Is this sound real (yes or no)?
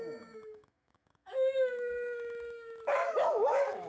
no